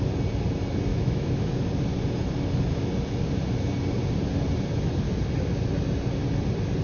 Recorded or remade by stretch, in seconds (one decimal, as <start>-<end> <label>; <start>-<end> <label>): 0.0-0.9 recorded; 0.9-1.6 remade; 1.6-6.8 recorded